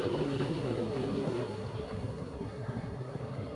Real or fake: fake